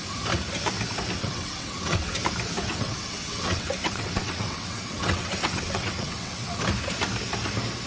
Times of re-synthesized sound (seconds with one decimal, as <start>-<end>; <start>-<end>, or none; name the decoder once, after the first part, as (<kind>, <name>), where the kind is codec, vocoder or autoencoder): 1.2-2.2 (vocoder, WaveNeXt); 2.7-6.6